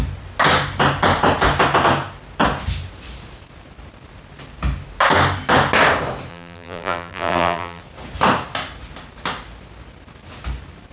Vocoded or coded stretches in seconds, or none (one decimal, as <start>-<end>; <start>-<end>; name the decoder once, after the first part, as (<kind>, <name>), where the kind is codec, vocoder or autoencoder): 6.3-7.8 (vocoder, BigVGAN v2)